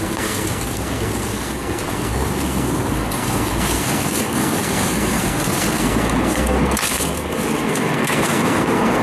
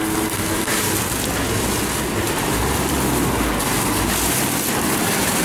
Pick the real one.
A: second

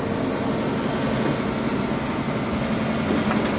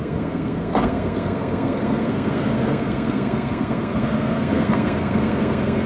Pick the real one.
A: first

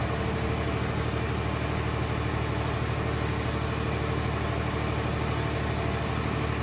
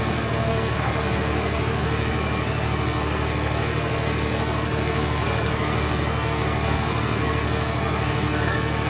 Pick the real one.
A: first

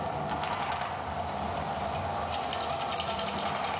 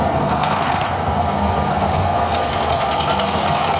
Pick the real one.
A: first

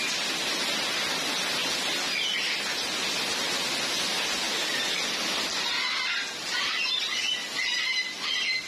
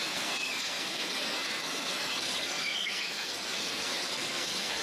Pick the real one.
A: first